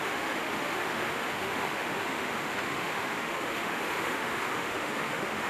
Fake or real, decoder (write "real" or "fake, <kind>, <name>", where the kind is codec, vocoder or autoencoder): fake, autoencoder, DAC-VAE